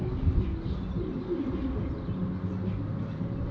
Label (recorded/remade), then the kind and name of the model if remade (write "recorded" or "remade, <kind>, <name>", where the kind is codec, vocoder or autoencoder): recorded